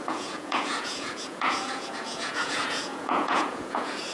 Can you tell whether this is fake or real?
fake